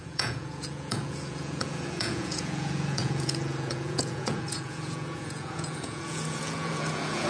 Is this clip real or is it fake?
fake